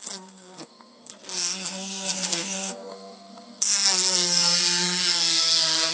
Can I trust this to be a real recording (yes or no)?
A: no